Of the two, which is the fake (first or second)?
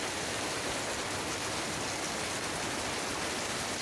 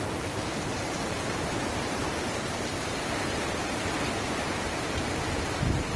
second